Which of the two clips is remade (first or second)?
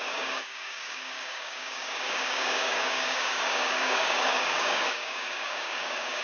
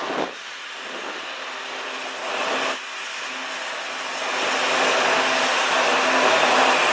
first